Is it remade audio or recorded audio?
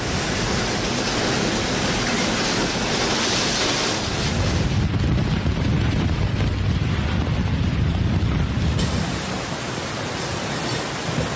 recorded